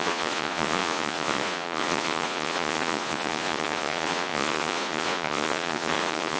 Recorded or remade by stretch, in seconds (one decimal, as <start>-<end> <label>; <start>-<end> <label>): 0.0-6.4 remade